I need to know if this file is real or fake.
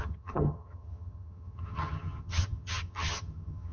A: fake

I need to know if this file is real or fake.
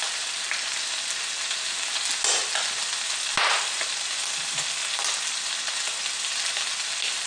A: real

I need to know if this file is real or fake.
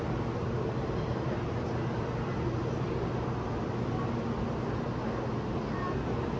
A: real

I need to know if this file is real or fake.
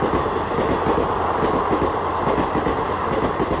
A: real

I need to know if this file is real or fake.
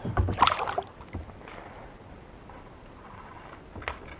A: real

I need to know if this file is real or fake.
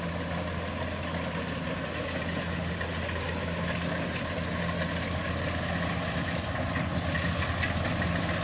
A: real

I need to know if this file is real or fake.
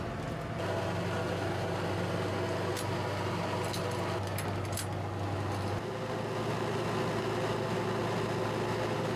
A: real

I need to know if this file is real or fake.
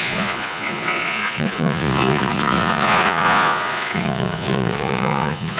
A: fake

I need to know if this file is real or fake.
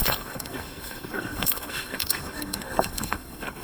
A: fake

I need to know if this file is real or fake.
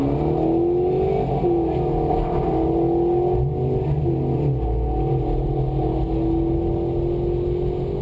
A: real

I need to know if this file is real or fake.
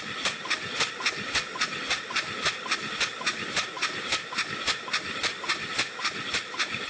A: fake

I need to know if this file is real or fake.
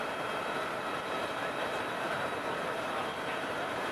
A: fake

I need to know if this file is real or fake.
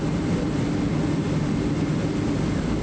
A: real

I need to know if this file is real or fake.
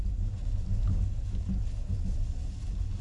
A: real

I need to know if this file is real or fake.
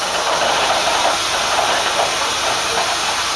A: real